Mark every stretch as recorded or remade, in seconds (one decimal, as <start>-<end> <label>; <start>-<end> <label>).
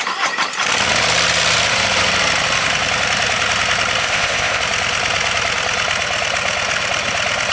0.0-4.0 recorded; 4.0-4.6 remade; 4.6-7.5 recorded